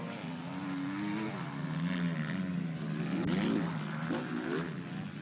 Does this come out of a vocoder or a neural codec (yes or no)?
no